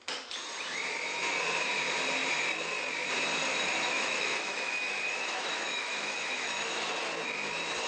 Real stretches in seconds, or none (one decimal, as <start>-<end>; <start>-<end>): 0.0-3.5; 6.9-7.9